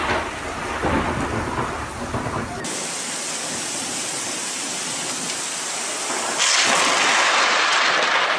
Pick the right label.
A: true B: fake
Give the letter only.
A